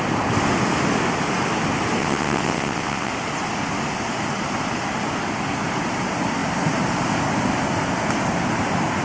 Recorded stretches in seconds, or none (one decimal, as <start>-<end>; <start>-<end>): 0.0-2.0; 3.1-9.0